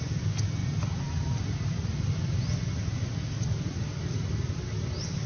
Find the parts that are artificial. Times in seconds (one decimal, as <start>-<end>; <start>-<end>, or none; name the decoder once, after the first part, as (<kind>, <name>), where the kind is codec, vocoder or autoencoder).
none